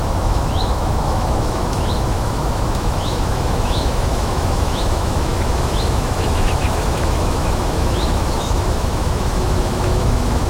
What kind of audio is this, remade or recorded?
remade